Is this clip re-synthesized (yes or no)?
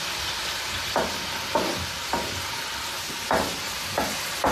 no